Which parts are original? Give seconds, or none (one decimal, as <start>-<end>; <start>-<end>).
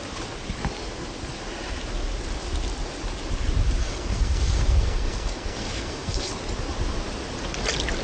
0.0-3.8; 6.3-8.0